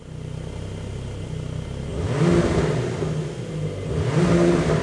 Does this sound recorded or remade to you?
recorded